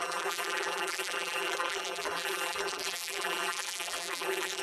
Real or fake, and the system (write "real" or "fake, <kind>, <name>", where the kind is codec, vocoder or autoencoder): fake, vocoder, BigVGAN v2